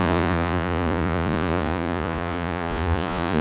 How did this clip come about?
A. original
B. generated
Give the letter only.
B